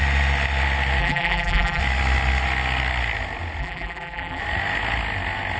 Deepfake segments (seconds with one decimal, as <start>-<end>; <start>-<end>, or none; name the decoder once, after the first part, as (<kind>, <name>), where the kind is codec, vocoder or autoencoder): 1.0-1.8 (vocoder, BigVGAN v2); 3.6-4.4

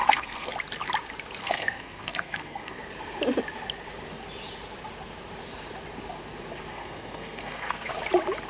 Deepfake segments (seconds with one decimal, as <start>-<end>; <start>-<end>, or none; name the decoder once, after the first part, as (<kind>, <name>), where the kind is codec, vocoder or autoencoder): 0.0-0.5 (codec, SNAC); 1.4-2.8; 6.7-7.9

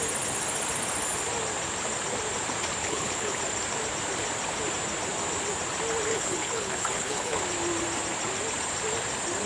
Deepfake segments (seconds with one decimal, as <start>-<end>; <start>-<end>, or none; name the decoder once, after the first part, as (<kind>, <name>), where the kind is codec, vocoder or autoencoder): 2.8-3.4 (codec, HILCodec); 6.1-7.4

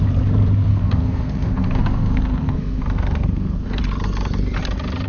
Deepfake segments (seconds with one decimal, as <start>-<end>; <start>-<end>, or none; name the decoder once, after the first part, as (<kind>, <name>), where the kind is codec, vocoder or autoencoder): 0.7-3.8 (codec, SNAC)

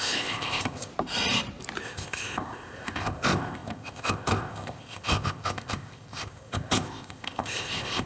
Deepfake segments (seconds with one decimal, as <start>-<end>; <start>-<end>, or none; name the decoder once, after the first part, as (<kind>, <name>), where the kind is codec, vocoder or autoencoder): 0.0-0.9 (codec, ZipCodec); 1.8-8.1